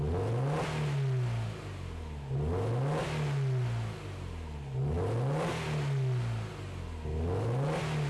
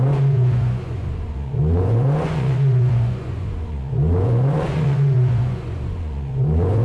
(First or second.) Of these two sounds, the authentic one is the first